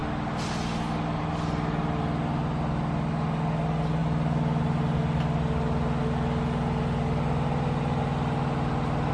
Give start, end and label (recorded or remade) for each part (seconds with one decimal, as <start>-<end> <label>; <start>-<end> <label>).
0.0-9.1 recorded